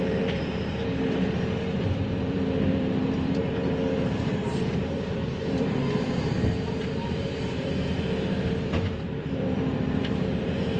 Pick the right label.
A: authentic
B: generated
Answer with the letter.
B